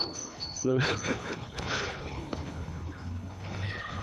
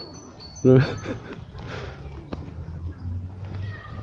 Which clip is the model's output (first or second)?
first